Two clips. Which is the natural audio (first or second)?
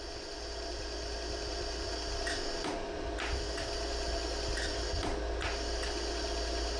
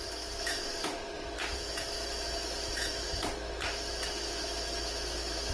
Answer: first